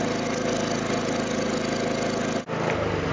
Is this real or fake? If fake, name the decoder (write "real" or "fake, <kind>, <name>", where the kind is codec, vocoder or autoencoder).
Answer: real